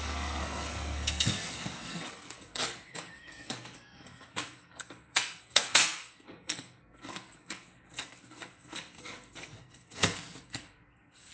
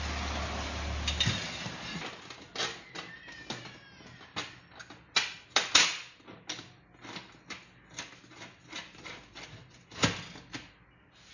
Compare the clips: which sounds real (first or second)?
second